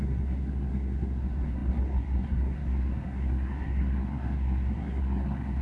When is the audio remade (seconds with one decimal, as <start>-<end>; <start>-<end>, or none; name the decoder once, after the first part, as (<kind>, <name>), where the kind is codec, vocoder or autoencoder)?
0.0-5.6 (codec, SNAC)